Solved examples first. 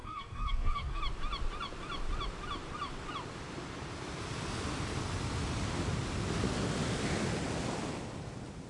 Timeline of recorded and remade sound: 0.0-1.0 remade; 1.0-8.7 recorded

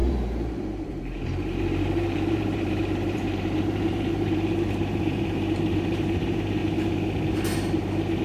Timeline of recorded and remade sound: 0.0-6.6 remade; 6.6-8.2 recorded